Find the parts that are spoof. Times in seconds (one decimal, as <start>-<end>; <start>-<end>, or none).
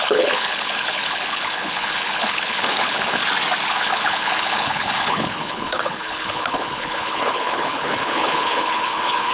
0.0-3.2; 3.7-9.3